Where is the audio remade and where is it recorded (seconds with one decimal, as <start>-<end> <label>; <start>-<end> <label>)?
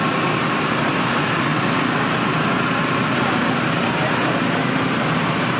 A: 0.0-1.5 remade; 1.5-4.9 recorded; 4.9-5.6 remade